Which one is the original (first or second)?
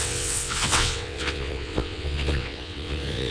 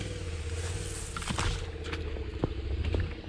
second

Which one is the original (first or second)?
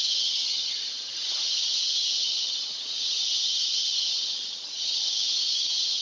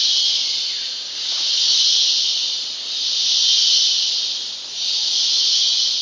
second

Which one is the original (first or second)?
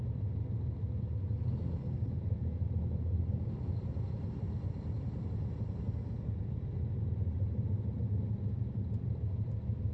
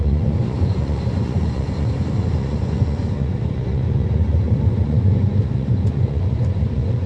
first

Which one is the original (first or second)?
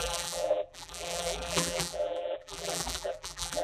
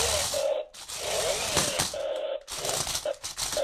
second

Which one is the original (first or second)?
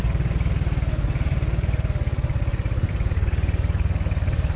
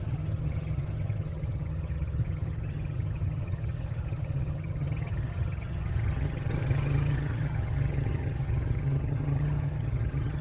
first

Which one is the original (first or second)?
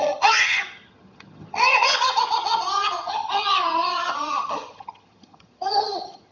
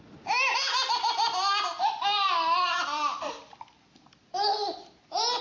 second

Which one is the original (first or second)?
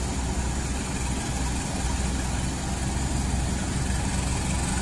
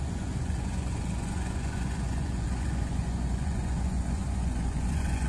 first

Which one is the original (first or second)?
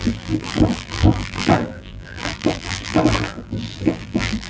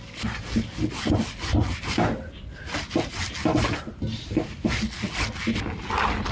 second